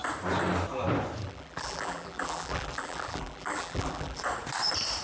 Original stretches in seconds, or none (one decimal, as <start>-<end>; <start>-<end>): 0.0-1.2; 4.2-5.0